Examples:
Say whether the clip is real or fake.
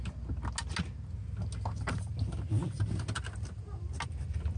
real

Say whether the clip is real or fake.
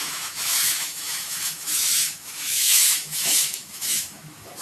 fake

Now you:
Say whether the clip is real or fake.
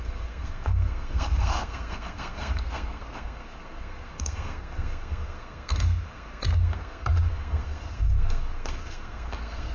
fake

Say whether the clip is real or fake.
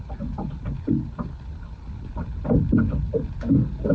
real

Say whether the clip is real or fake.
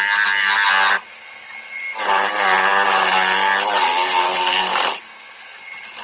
real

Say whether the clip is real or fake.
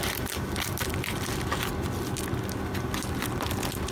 real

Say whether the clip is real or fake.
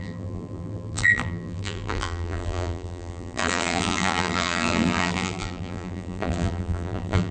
fake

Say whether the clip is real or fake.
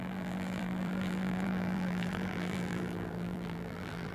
fake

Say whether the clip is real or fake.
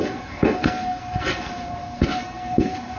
fake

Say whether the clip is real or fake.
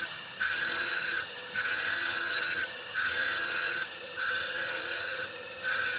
fake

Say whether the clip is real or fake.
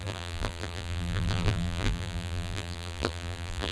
fake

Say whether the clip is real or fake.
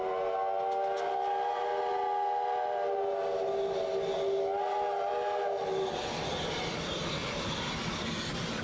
real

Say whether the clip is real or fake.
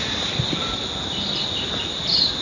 real